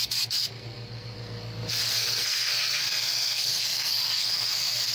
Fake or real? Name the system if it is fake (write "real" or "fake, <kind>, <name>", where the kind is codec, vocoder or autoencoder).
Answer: fake, codec, SNAC